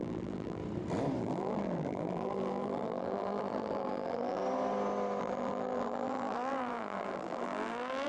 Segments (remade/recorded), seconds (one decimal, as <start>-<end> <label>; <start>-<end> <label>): 0.0-0.6 remade; 0.6-1.2 recorded; 1.2-4.4 remade; 4.4-5.2 recorded; 5.2-8.1 remade